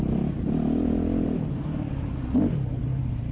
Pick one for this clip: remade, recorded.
recorded